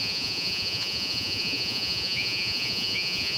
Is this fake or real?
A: fake